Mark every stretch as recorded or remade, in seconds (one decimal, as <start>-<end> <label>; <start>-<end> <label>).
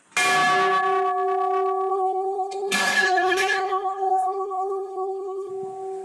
0.0-1.9 recorded; 1.9-5.5 remade; 5.5-6.0 recorded